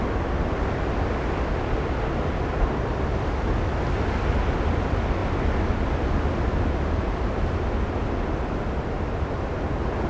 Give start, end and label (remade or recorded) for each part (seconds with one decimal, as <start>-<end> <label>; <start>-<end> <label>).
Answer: 0.0-10.1 recorded